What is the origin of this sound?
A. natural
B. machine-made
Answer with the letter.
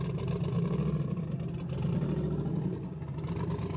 A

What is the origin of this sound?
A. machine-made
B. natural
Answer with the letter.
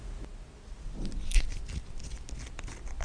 B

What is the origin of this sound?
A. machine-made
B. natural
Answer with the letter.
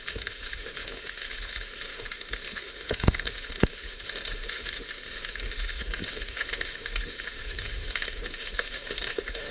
A